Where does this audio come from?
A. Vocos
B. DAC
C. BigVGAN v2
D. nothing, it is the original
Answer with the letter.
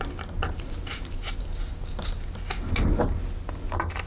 D